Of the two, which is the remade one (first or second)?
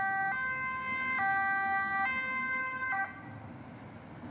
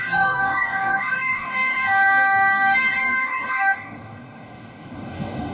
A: second